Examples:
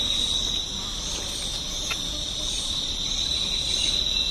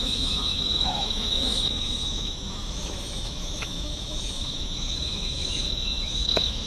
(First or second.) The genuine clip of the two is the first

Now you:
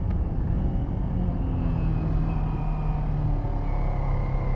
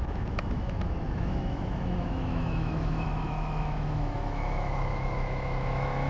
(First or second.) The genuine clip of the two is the first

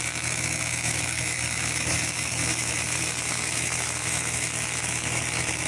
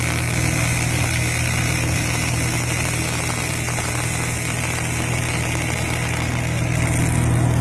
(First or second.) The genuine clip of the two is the second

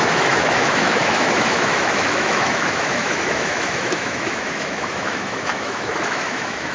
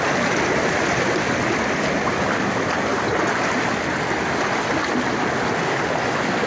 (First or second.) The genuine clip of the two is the second